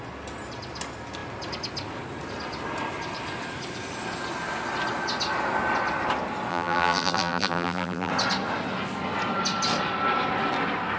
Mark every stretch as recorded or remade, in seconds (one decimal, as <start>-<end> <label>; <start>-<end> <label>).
0.0-6.5 recorded; 6.5-8.1 remade; 8.1-11.0 recorded